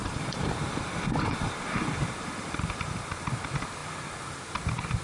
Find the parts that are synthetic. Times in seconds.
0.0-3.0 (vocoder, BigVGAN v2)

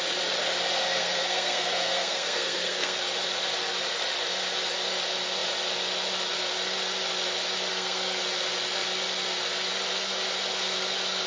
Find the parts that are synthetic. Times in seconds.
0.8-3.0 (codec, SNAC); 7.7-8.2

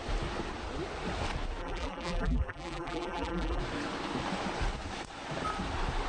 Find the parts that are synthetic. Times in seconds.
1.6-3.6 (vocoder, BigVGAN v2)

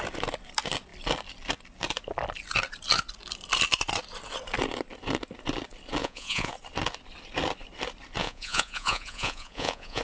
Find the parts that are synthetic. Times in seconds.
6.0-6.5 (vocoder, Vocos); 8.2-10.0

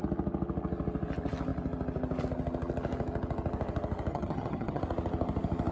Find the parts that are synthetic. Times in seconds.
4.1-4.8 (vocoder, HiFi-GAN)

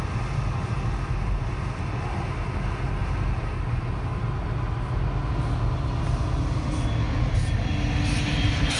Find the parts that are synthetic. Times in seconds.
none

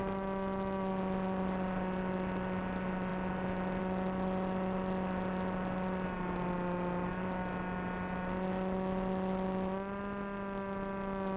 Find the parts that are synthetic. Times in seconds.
none